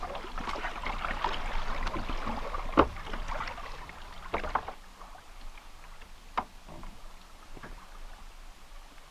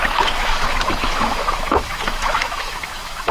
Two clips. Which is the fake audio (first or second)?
second